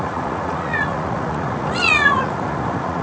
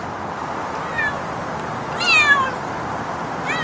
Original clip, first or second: second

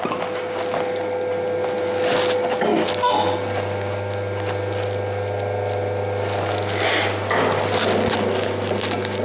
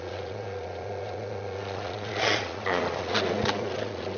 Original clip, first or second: first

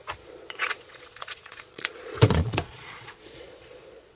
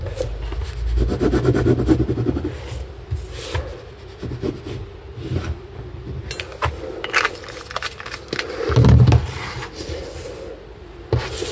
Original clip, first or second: second